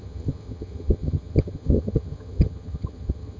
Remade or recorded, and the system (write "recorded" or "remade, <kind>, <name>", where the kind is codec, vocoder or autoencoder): remade, vocoder, HiFi-GAN